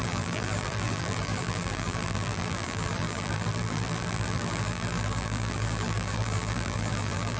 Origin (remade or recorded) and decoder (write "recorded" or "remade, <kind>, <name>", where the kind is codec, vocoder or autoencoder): remade, vocoder, BigVGAN v2